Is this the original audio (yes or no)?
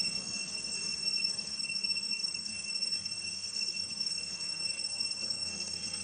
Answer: no